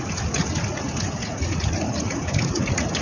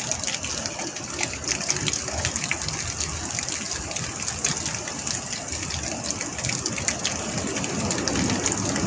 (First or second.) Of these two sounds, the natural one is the second